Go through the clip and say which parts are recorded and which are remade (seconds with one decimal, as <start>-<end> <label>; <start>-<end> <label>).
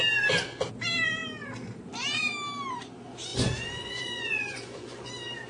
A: 0.0-3.3 recorded; 3.3-5.1 remade; 5.1-5.5 recorded